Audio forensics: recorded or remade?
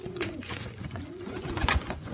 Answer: remade